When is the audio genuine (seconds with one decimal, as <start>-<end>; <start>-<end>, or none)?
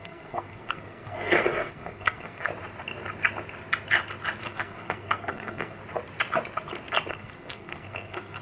2.5-4.4; 5.8-7.1